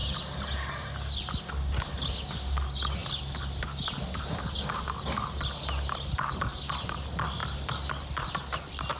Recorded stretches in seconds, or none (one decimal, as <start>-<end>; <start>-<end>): 0.0-9.0